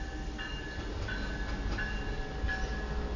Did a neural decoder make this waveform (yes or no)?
no